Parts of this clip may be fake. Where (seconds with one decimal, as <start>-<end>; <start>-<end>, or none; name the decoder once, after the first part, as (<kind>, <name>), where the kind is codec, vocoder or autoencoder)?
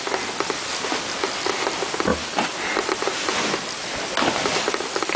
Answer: none